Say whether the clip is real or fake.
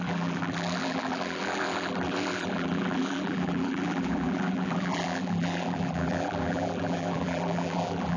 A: fake